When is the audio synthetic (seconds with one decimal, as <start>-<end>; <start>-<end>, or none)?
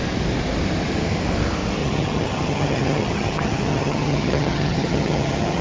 1.8-5.6